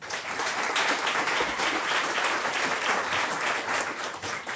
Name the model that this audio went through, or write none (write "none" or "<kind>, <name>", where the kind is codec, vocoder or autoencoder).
vocoder, BigVGAN v2